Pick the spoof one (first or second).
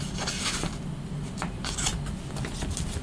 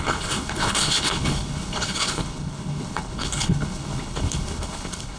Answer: second